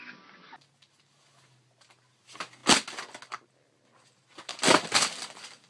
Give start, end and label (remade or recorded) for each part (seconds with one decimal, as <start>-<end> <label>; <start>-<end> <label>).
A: 0.0-5.7 recorded